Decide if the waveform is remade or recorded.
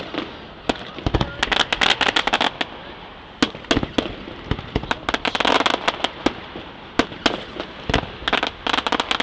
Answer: recorded